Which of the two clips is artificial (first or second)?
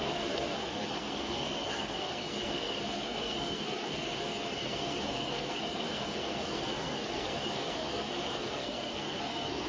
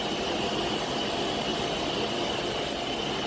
first